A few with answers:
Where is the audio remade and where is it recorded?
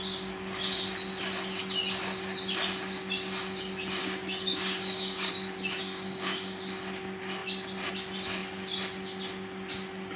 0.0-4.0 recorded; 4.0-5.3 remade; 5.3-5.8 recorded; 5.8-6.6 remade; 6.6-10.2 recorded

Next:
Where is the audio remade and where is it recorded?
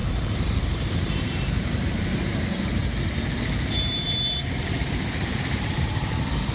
0.0-2.8 remade; 2.8-4.3 recorded; 4.3-6.5 remade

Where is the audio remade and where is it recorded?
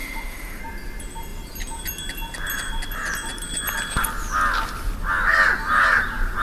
0.0-0.6 remade; 0.6-6.4 recorded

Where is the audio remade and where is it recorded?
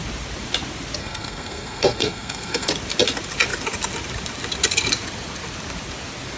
0.0-1.0 recorded; 1.0-2.7 remade; 2.7-6.4 recorded